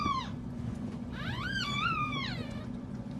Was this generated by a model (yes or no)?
yes